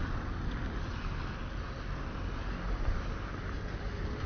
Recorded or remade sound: recorded